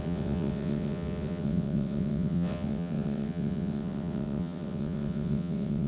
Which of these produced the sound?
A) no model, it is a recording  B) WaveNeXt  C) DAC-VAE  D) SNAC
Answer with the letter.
B